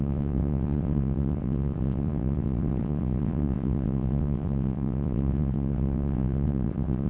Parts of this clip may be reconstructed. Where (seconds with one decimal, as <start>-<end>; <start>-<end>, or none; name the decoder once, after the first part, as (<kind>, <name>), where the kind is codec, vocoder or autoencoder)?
0.0-7.1 (vocoder, WaveNeXt)